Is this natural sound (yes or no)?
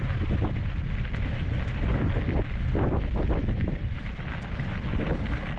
yes